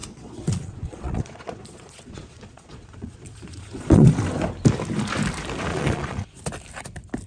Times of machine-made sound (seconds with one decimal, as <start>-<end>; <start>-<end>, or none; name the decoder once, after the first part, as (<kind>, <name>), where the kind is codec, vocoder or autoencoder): 0.0-4.1 (vocoder, Vocos); 5.7-6.4